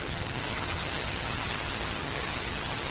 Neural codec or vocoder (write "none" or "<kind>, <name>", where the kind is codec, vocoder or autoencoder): vocoder, HiFi-GAN